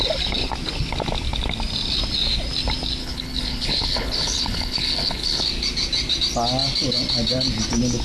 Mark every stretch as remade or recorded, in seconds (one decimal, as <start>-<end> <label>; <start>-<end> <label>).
0.0-3.0 recorded; 3.0-5.4 remade; 5.4-8.0 recorded